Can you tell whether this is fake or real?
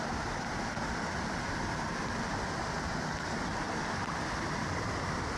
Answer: real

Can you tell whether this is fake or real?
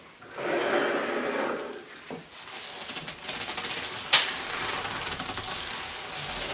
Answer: real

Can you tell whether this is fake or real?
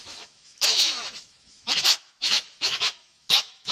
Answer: fake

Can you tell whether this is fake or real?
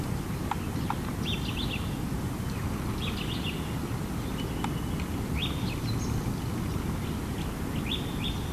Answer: real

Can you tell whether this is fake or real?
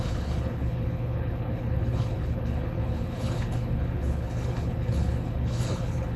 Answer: fake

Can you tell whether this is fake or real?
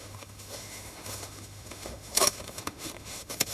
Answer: fake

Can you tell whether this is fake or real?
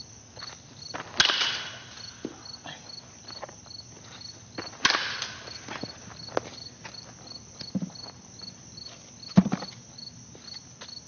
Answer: real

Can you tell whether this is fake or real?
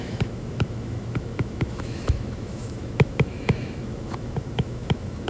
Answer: fake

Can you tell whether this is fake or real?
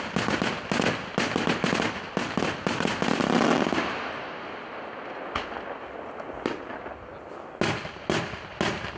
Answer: real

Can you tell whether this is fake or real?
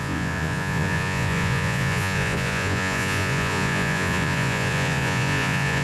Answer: fake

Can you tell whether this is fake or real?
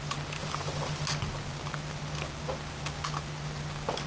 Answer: real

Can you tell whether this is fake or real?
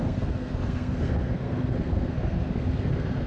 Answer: fake